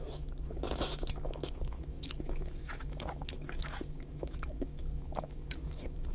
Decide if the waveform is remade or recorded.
remade